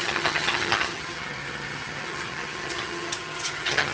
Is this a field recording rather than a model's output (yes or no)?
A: no